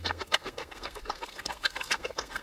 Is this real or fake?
fake